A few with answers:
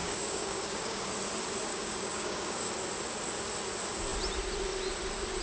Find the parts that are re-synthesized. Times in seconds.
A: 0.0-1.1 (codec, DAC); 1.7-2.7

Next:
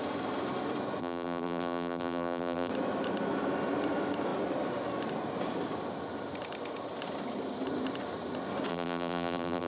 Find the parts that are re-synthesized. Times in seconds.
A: 1.0-2.7 (vocoder, BigVGAN v2); 8.7-9.7